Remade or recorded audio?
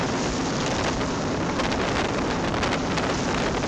remade